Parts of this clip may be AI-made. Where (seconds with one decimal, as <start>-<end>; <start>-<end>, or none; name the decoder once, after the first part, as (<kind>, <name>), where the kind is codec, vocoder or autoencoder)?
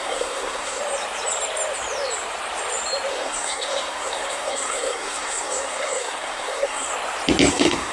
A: 0.0-0.8 (codec, SNAC); 3.1-6.9; 7.5-7.9